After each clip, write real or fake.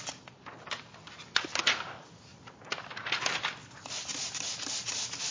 real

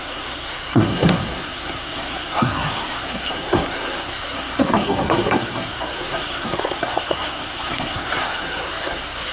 fake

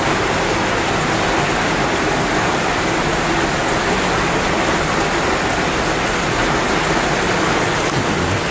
real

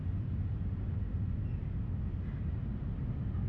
real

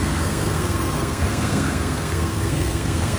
fake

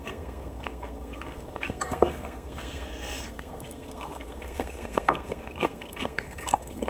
fake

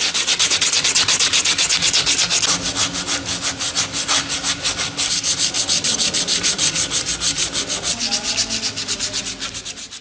real